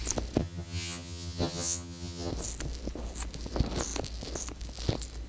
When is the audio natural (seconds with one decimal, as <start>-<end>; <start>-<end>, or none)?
0.0-0.4; 2.3-5.3